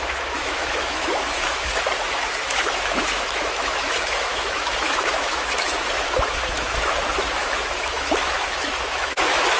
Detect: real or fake fake